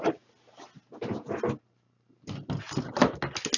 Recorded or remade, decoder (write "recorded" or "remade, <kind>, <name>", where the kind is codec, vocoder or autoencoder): recorded